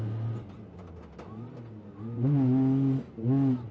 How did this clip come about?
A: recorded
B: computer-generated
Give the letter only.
A